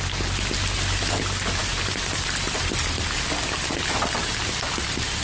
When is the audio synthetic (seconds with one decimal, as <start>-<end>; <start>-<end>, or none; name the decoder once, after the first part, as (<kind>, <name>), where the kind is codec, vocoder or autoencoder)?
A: none